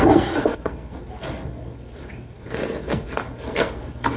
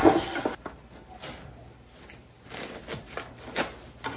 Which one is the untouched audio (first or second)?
second